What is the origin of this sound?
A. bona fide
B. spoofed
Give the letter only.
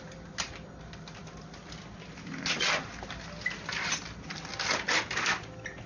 A